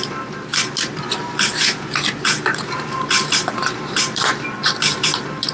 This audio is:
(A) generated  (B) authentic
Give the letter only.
A